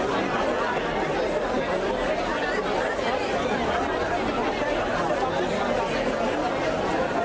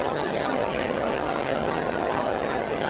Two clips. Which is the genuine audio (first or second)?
first